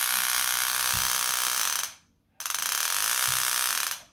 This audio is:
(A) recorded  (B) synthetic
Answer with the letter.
A